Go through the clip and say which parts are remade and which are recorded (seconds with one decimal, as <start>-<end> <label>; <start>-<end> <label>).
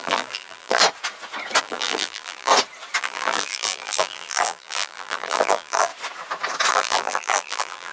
0.0-0.8 remade; 0.8-1.6 recorded; 1.6-2.5 remade; 2.5-3.0 recorded; 3.0-5.9 remade; 5.9-6.7 recorded; 6.7-7.9 remade